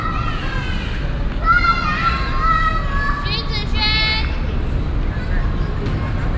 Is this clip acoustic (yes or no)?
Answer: yes